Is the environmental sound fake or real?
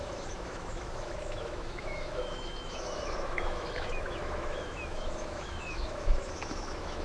fake